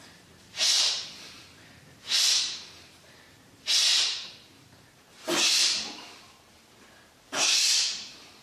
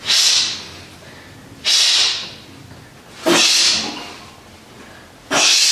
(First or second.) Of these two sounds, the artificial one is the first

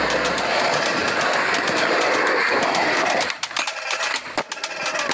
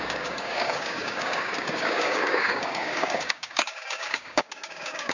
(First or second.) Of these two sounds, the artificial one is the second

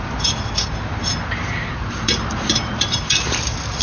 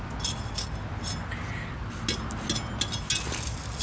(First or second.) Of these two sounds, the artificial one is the first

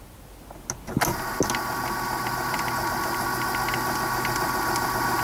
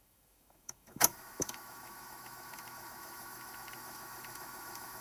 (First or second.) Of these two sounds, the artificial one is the second